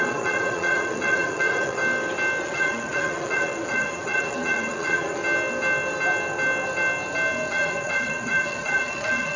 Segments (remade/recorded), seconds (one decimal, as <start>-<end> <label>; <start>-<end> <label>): 0.0-1.8 remade; 1.8-2.4 recorded; 2.4-5.2 remade; 5.2-7.5 recorded; 7.5-9.4 remade